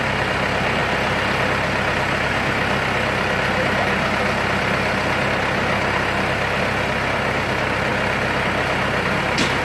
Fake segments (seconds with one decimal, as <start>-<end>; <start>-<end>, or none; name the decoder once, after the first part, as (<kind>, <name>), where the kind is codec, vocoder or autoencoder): none